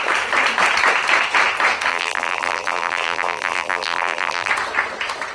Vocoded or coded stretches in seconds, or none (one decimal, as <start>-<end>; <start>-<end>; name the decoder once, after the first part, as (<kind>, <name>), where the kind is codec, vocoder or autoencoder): 1.9-4.5 (vocoder, BigVGAN v2)